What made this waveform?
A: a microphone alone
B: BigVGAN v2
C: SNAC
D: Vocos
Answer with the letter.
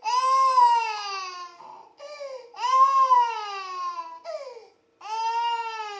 A